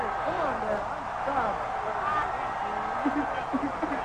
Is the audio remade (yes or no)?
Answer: no